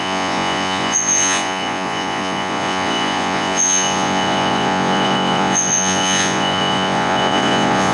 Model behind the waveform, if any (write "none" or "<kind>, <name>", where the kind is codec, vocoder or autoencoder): vocoder, Vocos